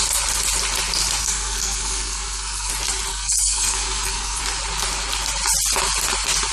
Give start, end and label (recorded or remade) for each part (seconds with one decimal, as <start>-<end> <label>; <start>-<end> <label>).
0.0-1.2 recorded; 1.2-2.7 remade; 2.7-3.1 recorded; 3.1-4.4 remade; 4.4-6.5 recorded